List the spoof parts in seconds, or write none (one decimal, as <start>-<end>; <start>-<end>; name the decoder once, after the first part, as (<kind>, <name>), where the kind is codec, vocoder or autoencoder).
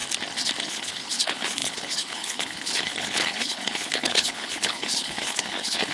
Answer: 0.6-5.9 (codec, HILCodec)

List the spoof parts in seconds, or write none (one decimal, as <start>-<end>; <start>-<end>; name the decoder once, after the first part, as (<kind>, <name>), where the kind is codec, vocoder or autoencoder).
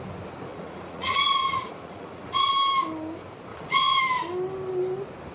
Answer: 0.5-2.5 (vocoder, Vocos); 3.5-4.0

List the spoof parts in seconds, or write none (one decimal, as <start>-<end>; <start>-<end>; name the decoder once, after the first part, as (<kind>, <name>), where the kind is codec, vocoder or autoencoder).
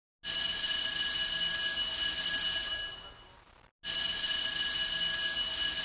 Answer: none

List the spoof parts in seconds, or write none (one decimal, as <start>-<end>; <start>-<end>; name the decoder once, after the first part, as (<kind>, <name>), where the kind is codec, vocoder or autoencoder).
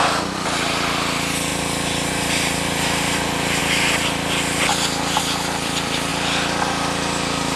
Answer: 0.0-1.5 (vocoder, BigVGAN v2); 2.1-3.6; 5.2-6.1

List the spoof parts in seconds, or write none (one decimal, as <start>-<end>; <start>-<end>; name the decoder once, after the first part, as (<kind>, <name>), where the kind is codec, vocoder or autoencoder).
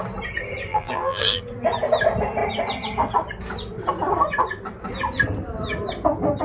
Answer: 0.7-1.4 (vocoder, BigVGAN v2)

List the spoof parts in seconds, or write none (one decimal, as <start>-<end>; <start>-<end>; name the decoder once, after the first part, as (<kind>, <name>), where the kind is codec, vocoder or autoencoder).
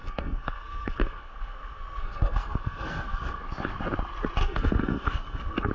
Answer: 0.0-3.4 (codec, SNAC); 4.4-5.7